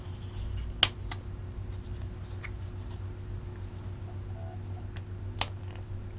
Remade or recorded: recorded